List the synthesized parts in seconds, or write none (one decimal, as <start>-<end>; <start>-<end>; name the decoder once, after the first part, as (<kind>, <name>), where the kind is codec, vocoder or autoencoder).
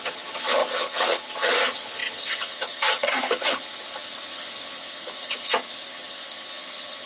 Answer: 0.0-7.1 (vocoder, HiFi-GAN)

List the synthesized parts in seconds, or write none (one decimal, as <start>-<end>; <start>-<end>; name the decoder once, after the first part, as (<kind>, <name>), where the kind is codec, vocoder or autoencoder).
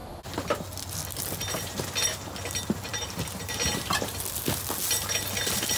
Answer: 2.9-4.2 (vocoder, BigVGAN v2)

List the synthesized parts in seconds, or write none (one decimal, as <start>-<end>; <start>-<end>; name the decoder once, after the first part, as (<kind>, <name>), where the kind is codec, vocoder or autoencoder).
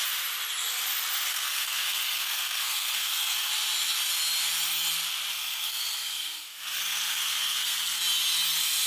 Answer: 1.3-3.5 (codec, SNAC); 5.3-8.0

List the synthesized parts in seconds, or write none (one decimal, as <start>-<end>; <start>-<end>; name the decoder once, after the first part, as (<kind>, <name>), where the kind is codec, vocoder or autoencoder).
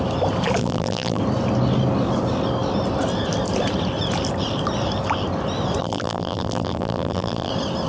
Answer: 0.6-1.2 (vocoder, BigVGAN v2); 5.8-7.5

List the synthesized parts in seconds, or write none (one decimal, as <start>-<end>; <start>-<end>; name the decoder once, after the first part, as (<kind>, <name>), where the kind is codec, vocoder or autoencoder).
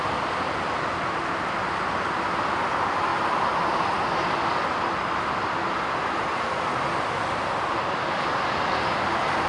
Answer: none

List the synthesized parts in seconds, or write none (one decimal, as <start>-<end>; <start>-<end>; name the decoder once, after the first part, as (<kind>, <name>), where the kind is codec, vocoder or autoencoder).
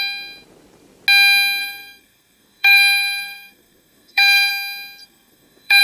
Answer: 1.6-4.5 (codec, SNAC); 5.0-5.8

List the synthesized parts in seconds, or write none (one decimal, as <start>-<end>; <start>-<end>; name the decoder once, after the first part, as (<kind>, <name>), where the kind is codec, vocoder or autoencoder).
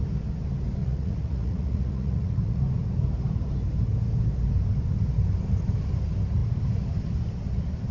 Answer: 0.8-2.6 (vocoder, Vocos)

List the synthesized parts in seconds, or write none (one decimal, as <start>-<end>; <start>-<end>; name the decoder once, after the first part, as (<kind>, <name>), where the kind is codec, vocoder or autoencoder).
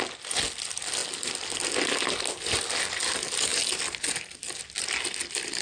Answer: none